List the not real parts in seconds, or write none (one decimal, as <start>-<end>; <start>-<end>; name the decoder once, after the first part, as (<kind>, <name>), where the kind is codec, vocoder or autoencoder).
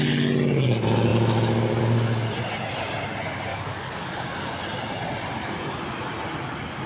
3.5-4.6 (codec, DAC)